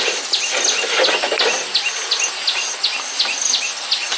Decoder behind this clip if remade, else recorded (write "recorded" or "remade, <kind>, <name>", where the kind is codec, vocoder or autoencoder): recorded